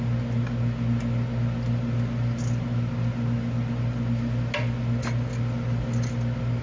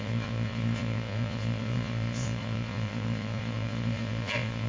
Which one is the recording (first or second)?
first